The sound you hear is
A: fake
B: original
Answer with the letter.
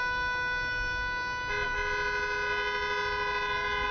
B